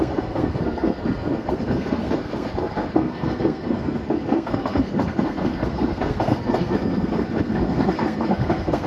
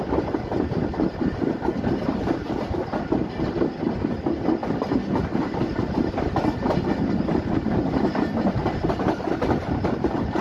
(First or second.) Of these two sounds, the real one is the second